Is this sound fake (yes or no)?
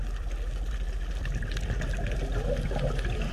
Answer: no